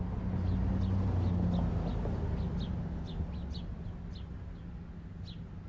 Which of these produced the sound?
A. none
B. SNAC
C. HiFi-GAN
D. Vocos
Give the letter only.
A